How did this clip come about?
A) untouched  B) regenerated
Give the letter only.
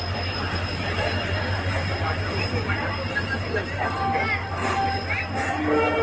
A